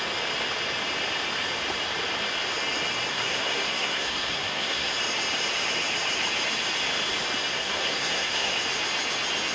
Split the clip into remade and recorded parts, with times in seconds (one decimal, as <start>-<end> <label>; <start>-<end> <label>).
0.0-3.1 recorded; 3.1-4.9 remade; 4.9-7.5 recorded; 7.5-8.5 remade; 8.5-9.5 recorded